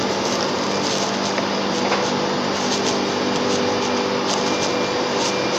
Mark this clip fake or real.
real